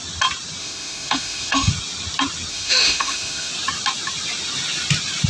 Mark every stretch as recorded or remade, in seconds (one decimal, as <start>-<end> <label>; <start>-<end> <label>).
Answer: 0.0-0.6 recorded; 0.6-1.7 remade; 1.7-2.5 recorded; 2.5-3.5 remade; 3.5-5.3 recorded